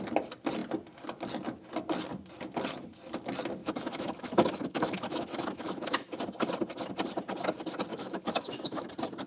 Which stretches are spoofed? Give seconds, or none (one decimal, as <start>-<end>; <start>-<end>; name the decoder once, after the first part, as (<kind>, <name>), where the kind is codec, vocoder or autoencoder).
3.6-6.2 (autoencoder, DAC-VAE); 7.9-8.9